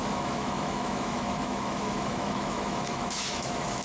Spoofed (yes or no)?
yes